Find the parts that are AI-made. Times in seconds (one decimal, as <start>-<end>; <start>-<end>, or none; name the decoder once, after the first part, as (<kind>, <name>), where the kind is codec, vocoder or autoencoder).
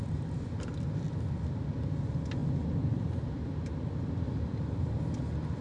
none